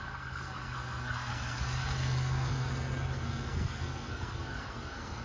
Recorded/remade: remade